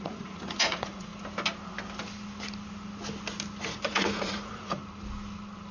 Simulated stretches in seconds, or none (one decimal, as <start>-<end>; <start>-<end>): 0.0-1.1; 3.6-4.8